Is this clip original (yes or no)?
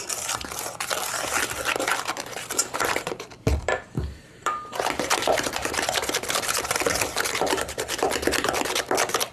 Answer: no